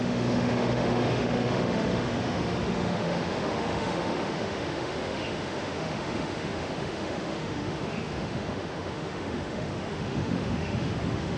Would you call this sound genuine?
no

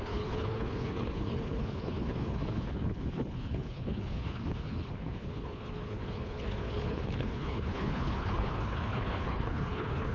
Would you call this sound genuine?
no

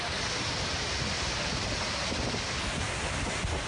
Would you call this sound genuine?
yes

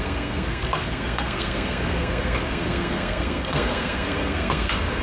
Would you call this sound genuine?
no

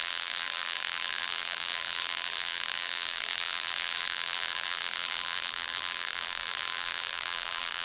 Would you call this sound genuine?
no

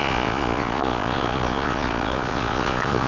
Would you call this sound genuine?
no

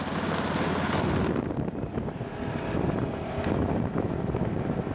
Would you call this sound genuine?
yes